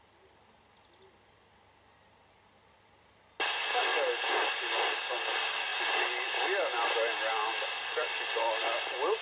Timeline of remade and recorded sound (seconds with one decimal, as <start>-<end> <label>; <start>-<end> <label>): 0.0-9.2 recorded